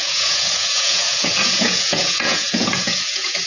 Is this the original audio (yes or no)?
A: no